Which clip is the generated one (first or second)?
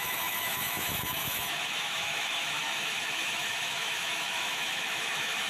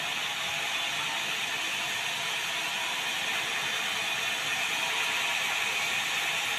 first